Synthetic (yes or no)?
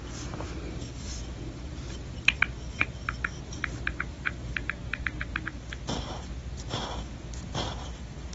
no